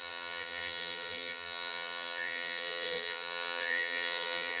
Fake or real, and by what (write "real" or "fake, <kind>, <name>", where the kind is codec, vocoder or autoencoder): fake, vocoder, BigVGAN v2